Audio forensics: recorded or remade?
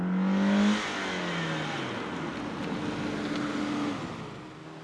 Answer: recorded